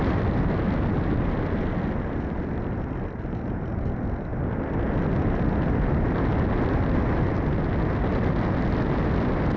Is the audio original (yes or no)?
yes